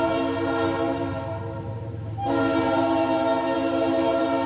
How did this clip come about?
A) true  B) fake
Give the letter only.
B